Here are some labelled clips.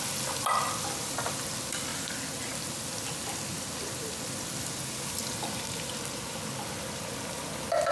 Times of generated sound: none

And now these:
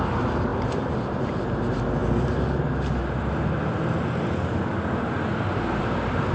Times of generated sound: none

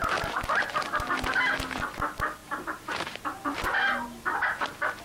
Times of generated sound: 2.4-3.2 (vocoder, BigVGAN v2)

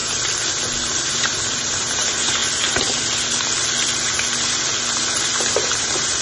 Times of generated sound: 1.1-2.4 (vocoder, BigVGAN v2); 5.2-6.2

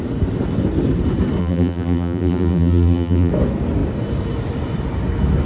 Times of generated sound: 1.4-3.3 (vocoder, BigVGAN v2)

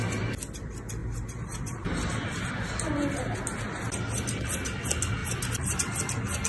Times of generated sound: 1.0-2.5 (vocoder, BigVGAN v2)